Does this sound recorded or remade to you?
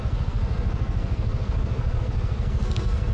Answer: remade